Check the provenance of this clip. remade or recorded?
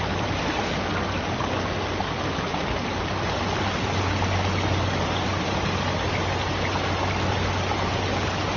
recorded